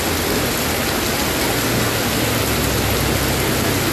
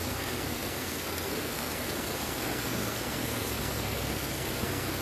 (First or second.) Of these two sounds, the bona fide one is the first